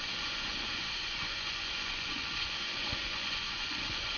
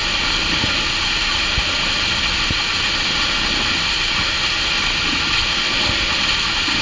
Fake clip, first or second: first